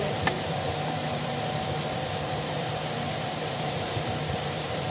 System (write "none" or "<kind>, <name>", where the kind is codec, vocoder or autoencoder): vocoder, BigVGAN v2